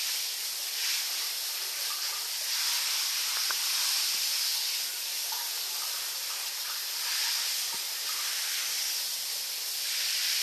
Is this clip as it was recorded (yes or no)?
yes